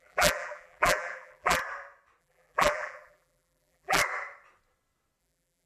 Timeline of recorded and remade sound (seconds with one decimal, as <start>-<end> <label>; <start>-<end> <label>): 0.0-1.6 remade; 1.6-2.2 recorded; 2.2-4.0 remade; 4.0-5.2 recorded; 5.2-5.7 remade